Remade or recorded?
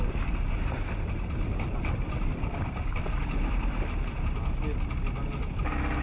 recorded